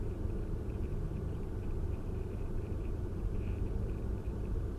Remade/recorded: remade